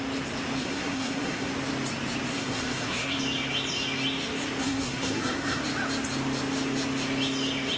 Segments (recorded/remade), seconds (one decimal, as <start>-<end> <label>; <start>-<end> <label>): 0.0-0.6 recorded; 0.6-1.5 remade; 1.5-2.3 recorded; 2.3-3.2 remade; 3.2-4.6 recorded; 4.6-5.6 remade; 5.6-7.8 recorded